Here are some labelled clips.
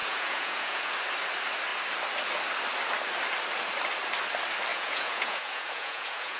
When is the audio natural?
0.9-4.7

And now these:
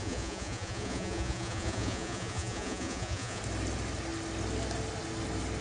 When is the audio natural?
3.4-5.6